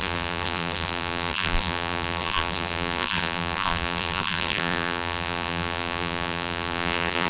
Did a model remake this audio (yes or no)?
yes